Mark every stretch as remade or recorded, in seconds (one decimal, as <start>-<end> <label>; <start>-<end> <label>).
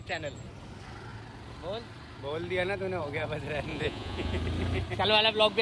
0.0-3.7 recorded; 3.7-4.4 remade; 4.4-5.6 recorded